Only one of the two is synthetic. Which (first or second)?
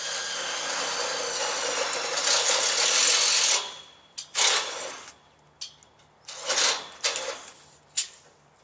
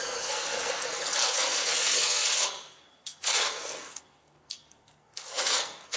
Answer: second